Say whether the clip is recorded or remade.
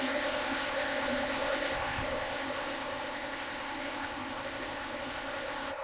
remade